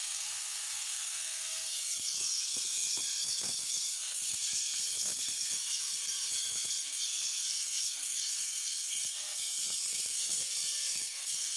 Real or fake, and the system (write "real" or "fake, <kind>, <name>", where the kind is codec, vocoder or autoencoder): fake, codec, SNAC